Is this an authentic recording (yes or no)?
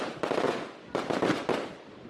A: yes